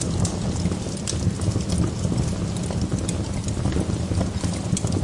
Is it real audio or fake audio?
real